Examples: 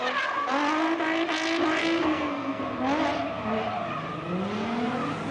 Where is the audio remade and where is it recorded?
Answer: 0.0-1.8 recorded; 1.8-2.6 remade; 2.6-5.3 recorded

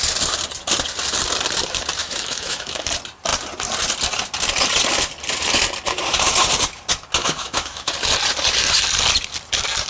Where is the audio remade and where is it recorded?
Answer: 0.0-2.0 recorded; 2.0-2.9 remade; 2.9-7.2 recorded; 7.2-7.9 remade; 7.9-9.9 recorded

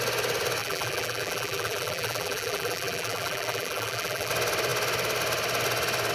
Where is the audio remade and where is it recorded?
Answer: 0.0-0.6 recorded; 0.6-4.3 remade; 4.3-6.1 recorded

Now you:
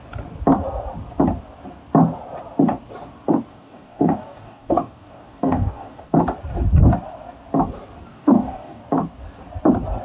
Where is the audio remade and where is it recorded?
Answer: 0.0-3.5 recorded; 3.5-6.2 remade; 6.2-8.1 recorded; 8.1-8.8 remade; 8.8-10.0 recorded